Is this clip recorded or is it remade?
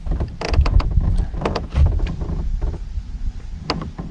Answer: recorded